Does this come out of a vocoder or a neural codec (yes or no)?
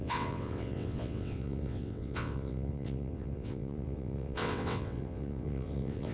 yes